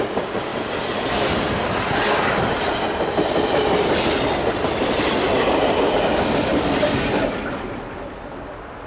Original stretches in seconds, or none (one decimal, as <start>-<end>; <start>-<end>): 0.5-5.5